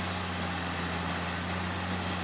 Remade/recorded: recorded